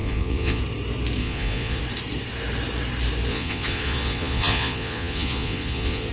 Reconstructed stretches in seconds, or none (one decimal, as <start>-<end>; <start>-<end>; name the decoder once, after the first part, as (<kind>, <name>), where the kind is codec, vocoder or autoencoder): 0.0-0.6 (vocoder, Vocos); 1.2-1.8; 3.3-6.1